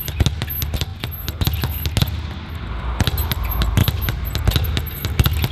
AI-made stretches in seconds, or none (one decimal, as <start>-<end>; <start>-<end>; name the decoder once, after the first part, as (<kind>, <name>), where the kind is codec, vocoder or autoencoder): 3.8-4.4 (vocoder, BigVGAN v2)